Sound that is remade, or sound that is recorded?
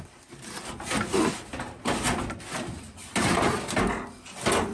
recorded